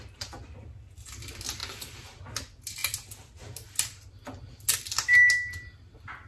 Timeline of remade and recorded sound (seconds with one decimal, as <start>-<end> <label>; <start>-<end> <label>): 0.0-1.6 recorded; 1.6-2.2 remade; 2.2-6.3 recorded